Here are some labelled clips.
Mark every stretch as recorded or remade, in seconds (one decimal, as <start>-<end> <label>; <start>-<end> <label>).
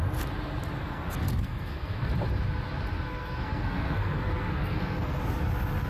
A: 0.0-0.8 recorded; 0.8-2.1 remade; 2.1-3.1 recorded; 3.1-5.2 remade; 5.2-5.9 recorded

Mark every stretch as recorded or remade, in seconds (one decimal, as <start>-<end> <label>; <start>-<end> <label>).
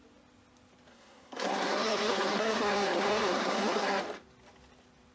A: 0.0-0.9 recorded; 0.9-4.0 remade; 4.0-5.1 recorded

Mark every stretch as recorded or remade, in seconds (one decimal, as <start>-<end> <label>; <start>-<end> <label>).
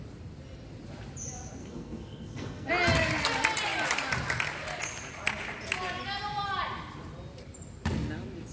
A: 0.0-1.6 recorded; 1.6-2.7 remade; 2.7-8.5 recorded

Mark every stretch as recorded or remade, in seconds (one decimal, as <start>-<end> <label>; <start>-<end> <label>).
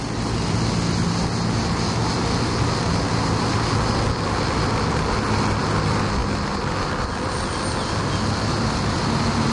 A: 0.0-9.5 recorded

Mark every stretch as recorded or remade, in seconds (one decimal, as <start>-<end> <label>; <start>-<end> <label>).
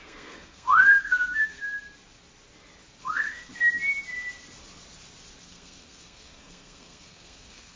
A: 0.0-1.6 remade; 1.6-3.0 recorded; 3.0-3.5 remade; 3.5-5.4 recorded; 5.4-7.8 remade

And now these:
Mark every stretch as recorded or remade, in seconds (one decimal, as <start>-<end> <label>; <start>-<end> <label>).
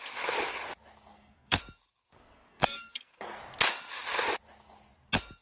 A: 0.0-1.1 recorded; 1.1-1.6 remade; 1.6-2.0 recorded; 2.0-3.4 remade; 3.4-5.4 recorded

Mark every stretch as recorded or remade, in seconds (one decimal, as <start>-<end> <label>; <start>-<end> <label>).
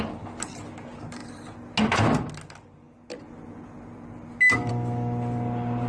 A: 0.0-5.9 recorded